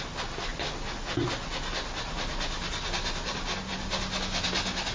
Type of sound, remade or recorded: recorded